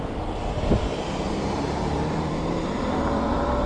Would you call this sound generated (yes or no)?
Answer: yes